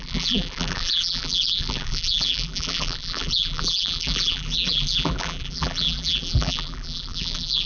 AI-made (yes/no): yes